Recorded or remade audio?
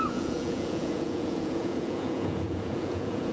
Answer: remade